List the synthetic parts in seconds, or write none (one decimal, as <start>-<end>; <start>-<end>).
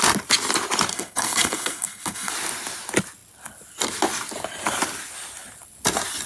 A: 0.9-2.3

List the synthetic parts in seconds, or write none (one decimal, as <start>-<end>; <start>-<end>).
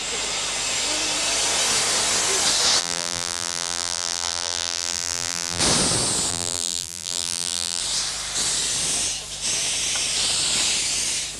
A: 2.8-5.6; 6.3-7.8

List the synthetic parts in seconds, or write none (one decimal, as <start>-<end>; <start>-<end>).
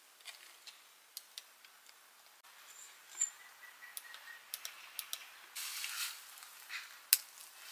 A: none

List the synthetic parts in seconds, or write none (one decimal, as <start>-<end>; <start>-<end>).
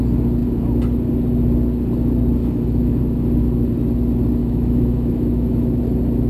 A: 2.4-3.0; 4.4-5.8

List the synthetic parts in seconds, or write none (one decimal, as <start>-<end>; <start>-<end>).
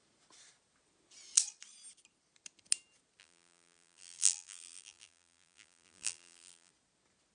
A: 3.2-6.7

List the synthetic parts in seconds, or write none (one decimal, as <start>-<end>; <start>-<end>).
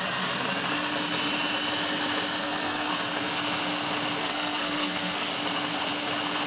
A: 2.4-2.9; 4.2-5.3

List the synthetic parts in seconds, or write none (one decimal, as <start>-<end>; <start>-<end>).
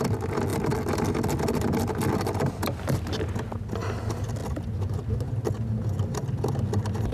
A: none